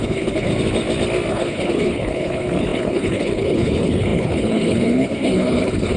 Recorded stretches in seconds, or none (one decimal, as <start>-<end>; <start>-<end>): 0.5-1.3